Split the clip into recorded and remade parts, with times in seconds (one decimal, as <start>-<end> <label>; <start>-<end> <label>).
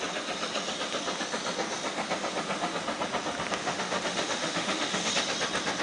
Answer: 0.0-3.6 recorded; 3.6-5.1 remade; 5.1-5.8 recorded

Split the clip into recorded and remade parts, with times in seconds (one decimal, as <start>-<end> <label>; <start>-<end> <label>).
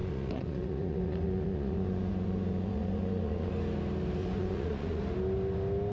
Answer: 0.0-3.5 remade; 3.5-4.2 recorded; 4.2-5.0 remade; 5.0-5.9 recorded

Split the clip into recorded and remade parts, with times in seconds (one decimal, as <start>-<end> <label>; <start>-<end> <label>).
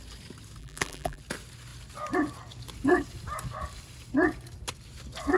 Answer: 0.0-0.6 recorded; 0.6-1.2 remade; 1.2-5.4 recorded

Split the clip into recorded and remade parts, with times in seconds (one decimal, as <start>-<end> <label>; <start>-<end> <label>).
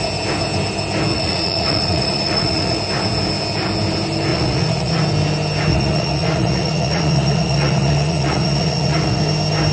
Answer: 0.0-1.1 recorded; 1.1-2.8 remade; 2.8-4.3 recorded; 4.3-5.0 remade; 5.0-5.7 recorded; 5.7-9.2 remade; 9.2-9.7 recorded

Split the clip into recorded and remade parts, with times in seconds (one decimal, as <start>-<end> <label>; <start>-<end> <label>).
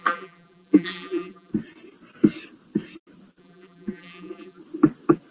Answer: 0.0-1.5 remade; 1.5-3.4 recorded; 3.4-4.6 remade; 4.6-5.3 recorded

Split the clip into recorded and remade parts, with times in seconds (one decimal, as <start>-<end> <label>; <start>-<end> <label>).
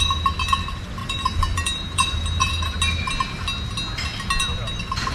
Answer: 0.0-1.0 recorded; 1.0-2.5 remade; 2.5-5.1 recorded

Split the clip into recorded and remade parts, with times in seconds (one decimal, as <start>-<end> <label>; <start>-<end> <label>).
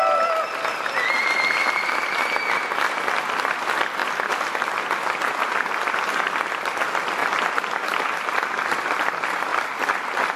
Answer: 0.0-10.4 recorded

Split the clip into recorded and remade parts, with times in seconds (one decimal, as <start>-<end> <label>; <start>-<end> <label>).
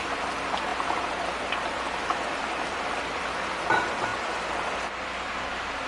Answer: 0.0-2.4 recorded; 2.4-3.2 remade; 3.2-5.9 recorded